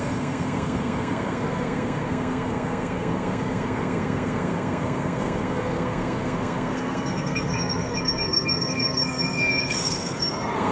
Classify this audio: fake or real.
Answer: fake